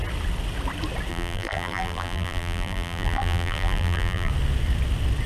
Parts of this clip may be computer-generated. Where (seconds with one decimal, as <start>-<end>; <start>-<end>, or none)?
1.1-4.3